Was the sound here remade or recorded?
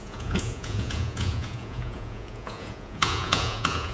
remade